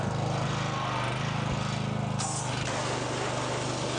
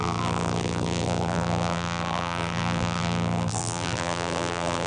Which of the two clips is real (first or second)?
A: first